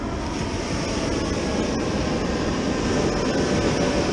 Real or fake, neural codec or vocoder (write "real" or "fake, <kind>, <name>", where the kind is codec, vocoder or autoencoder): real